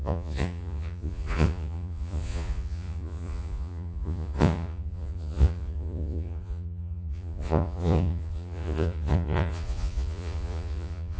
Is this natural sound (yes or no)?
no